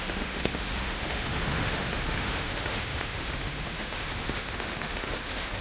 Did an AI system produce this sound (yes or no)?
yes